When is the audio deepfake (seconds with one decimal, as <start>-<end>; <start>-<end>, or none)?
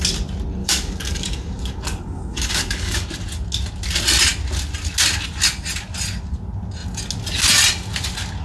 0.6-3.1